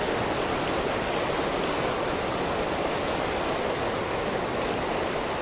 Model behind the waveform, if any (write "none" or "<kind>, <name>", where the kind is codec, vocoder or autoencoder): none